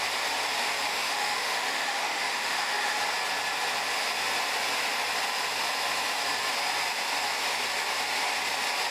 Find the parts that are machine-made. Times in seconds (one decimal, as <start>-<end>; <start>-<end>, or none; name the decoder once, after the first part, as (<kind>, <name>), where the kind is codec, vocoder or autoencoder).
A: 0.9-3.0 (autoencoder, DAC-VAE)